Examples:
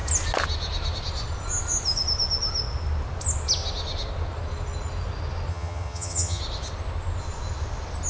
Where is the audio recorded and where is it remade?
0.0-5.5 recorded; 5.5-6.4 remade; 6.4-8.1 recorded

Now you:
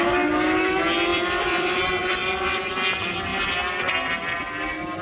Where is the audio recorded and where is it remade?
0.0-1.1 recorded; 1.1-1.8 remade; 1.8-2.2 recorded; 2.2-2.7 remade; 2.7-5.0 recorded

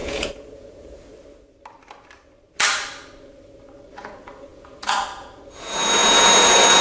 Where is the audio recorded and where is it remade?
0.0-1.1 remade; 1.1-3.9 recorded; 3.9-6.8 remade